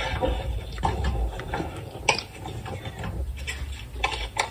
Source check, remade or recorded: recorded